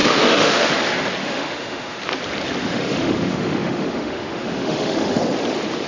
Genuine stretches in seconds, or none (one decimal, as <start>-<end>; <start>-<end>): 0.7-1.2; 2.0-2.6; 5.2-5.9